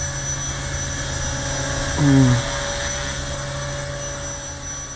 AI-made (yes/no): no